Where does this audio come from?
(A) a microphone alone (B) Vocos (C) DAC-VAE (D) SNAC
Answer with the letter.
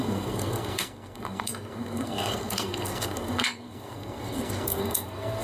D